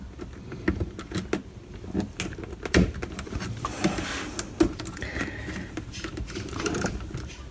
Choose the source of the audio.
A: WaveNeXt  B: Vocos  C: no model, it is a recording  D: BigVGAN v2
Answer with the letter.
C